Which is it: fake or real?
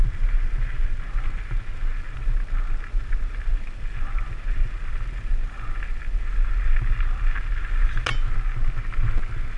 real